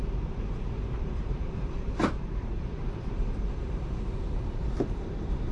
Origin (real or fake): fake